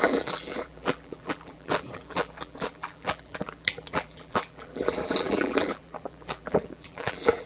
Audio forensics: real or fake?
fake